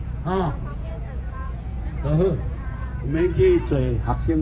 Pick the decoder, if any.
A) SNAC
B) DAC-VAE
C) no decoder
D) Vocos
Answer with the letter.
D